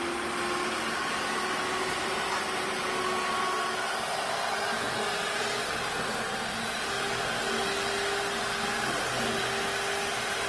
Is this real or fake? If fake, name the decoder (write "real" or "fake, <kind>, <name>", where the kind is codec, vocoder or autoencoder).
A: real